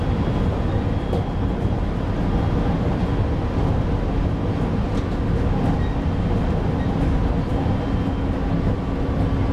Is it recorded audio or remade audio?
recorded